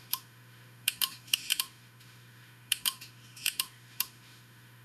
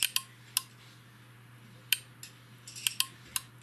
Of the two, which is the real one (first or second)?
second